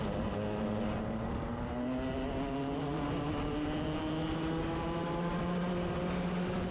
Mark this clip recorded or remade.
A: recorded